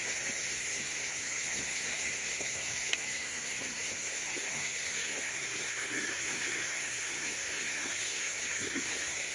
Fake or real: fake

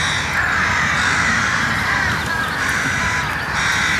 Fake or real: real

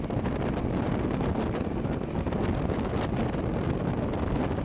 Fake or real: real